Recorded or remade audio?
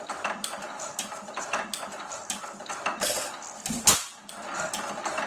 recorded